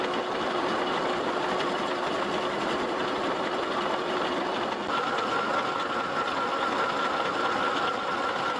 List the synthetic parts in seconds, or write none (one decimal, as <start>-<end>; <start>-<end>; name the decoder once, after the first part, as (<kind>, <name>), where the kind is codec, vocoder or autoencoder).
none